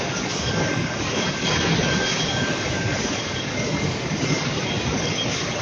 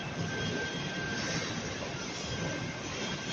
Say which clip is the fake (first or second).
first